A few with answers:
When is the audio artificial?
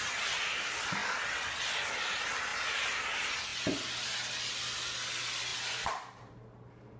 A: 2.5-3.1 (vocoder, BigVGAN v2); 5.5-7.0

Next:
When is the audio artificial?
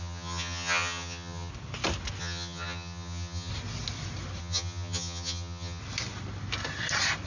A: 0.0-1.5 (vocoder, HiFi-GAN); 2.2-3.5; 4.4-5.8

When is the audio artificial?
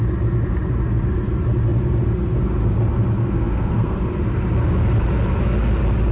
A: 3.2-4.0 (codec, SNAC)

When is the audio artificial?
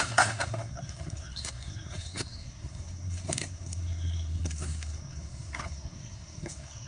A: 0.0-6.9 (codec, SNAC)